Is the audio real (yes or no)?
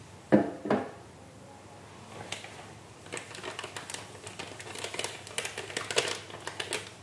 yes